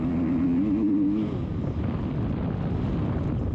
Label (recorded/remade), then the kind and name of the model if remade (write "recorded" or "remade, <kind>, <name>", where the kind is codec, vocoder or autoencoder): recorded